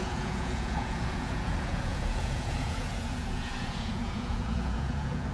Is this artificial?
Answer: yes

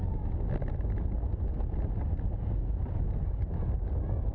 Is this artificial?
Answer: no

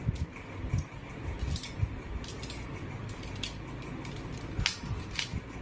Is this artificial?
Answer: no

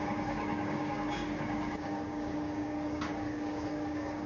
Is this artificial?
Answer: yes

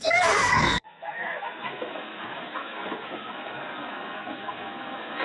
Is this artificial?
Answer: yes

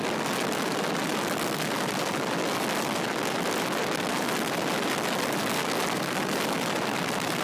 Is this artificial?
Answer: no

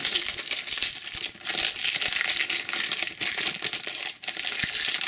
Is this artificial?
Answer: no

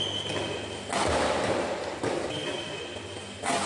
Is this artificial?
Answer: no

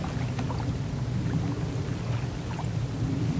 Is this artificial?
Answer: no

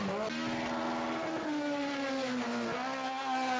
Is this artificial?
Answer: no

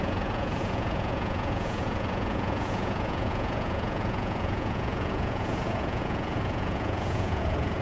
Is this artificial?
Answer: yes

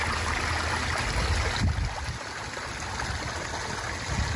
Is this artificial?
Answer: no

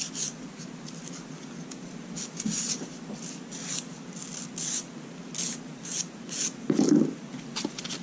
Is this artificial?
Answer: no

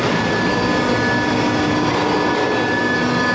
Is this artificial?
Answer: no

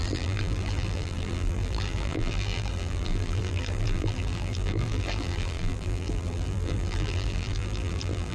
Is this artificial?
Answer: yes